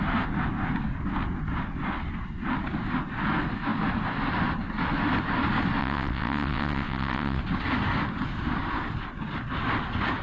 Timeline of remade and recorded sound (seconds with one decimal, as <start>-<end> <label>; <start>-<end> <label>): 0.0-5.8 recorded; 5.8-7.4 remade; 7.4-10.2 recorded